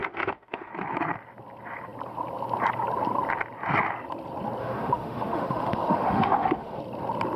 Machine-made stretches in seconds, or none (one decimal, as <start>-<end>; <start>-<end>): 0.0-0.7; 4.6-6.8

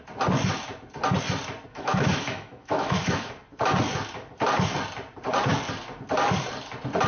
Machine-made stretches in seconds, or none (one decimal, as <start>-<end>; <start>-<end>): 1.7-3.3

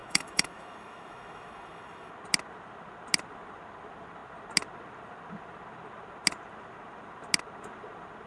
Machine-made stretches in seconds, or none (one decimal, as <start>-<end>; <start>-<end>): 0.0-2.1

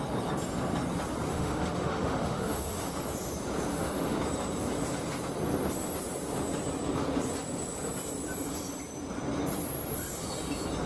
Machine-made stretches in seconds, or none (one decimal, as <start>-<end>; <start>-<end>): 1.3-2.9; 3.7-4.2

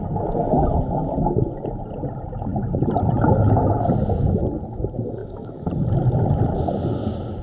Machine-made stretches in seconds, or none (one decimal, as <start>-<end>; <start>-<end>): 5.2-5.7

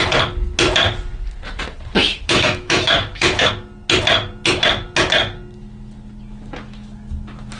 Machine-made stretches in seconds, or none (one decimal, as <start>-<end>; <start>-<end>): 2.0-3.5

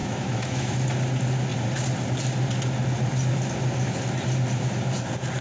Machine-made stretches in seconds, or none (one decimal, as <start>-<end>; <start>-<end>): 0.0-0.7

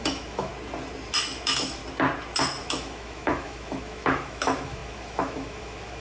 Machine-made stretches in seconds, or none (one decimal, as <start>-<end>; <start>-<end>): 0.0-0.5; 1.2-1.8; 2.6-6.0